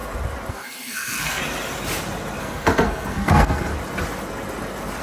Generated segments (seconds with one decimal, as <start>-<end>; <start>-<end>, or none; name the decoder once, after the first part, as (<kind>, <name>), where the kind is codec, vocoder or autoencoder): 0.5-1.4 (codec, SNAC); 2.4-3.7